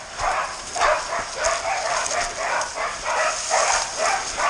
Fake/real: real